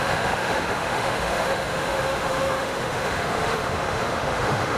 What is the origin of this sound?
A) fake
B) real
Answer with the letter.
A